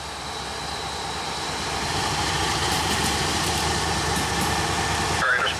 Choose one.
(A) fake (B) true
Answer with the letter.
A